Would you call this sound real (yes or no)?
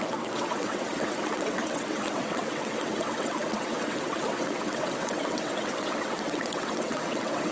no